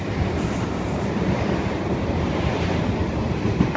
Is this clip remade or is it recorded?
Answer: remade